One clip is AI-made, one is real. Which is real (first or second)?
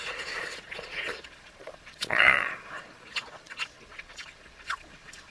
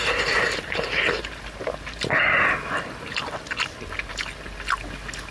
second